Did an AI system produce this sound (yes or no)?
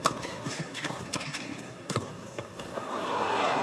yes